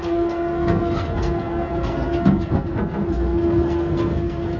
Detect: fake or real fake